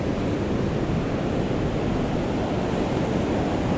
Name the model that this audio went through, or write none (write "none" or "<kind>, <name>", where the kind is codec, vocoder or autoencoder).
none